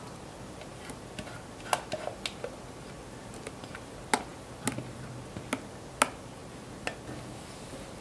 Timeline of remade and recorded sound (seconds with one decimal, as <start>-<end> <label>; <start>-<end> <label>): 0.0-8.0 recorded